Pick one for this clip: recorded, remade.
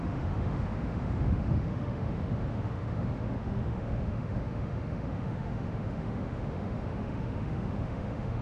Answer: remade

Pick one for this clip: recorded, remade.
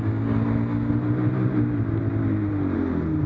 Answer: recorded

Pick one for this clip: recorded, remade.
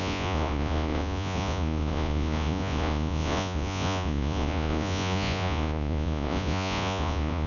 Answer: remade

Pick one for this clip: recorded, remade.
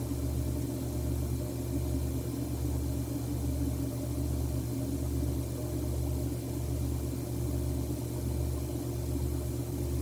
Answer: recorded